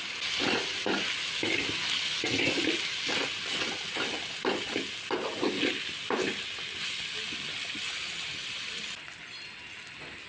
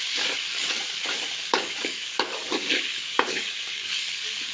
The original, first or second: first